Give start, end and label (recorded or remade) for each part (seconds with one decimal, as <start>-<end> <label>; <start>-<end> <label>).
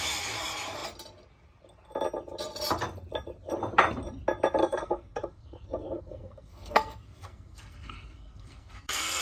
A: 0.0-4.6 recorded; 4.6-9.2 remade